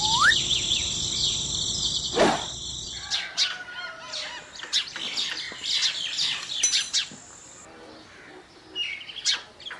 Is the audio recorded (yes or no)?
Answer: yes